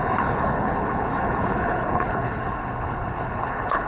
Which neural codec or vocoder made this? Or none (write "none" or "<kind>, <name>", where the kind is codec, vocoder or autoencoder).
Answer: codec, HILCodec